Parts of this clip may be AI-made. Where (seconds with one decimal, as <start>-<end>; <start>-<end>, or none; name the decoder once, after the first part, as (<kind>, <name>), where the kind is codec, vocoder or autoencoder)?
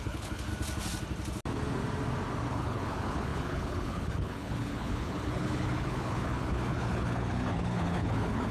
0.0-0.5 (codec, HILCodec); 2.5-8.5